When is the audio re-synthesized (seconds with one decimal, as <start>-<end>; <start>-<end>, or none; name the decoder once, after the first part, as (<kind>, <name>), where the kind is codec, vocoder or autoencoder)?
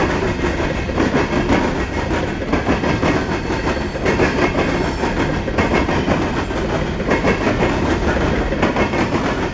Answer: none